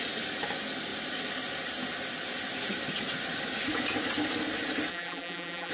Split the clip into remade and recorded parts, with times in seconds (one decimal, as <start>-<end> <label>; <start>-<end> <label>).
0.0-4.9 recorded; 4.9-5.7 remade